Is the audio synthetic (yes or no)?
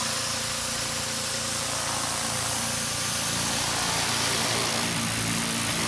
no